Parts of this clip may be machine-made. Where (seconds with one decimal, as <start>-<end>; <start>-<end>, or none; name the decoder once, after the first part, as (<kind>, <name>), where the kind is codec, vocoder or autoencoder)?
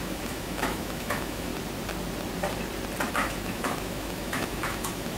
0.0-1.5 (autoencoder, DAC-VAE); 3.1-5.2